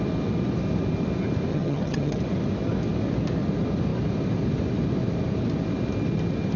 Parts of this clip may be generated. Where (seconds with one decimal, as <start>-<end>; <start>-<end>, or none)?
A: 1.5-2.2